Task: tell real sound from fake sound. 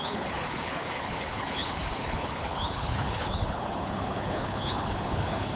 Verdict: fake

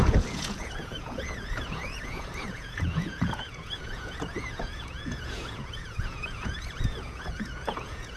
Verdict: fake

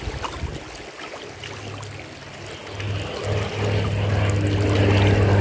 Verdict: real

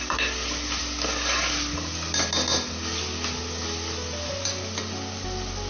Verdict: real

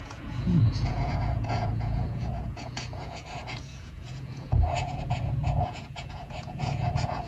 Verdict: fake